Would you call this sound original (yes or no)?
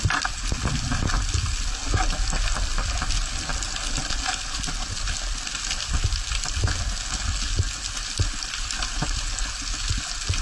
yes